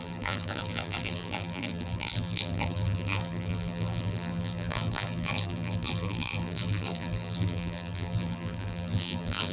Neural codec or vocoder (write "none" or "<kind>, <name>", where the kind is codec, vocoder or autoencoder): vocoder, BigVGAN v2